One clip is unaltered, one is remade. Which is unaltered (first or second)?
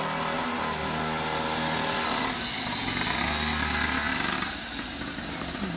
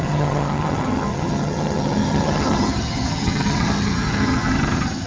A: first